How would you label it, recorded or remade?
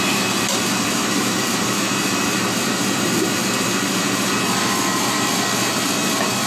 remade